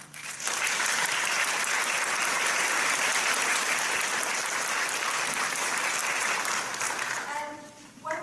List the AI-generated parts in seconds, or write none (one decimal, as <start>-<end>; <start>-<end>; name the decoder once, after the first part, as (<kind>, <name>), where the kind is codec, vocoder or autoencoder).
0.0-3.1 (vocoder, BigVGAN v2); 4.7-8.2